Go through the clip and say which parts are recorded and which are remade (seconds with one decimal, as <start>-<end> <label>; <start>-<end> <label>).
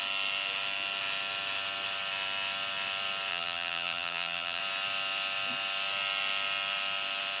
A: 0.0-3.3 recorded; 3.3-4.6 remade; 4.6-7.4 recorded